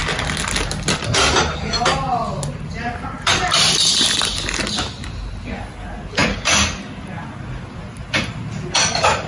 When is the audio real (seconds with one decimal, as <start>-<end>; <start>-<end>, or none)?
0.0-9.3